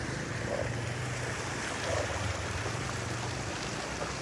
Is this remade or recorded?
recorded